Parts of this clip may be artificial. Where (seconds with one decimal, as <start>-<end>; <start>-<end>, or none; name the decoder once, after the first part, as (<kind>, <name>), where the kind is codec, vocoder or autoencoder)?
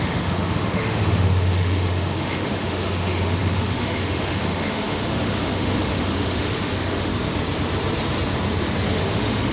0.0-7.1 (autoencoder, DAC-VAE); 8.9-9.5